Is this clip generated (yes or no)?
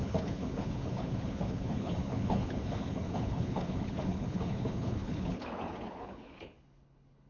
yes